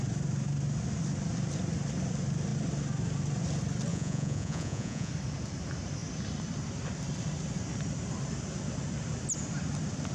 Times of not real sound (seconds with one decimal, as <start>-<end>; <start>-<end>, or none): 3.9-5.1